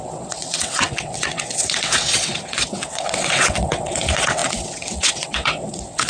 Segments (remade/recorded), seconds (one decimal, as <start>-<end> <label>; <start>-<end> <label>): 0.0-6.1 remade